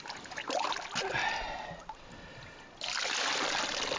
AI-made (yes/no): no